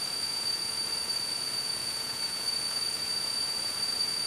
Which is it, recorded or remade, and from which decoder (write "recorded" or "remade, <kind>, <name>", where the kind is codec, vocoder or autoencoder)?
remade, vocoder, Vocos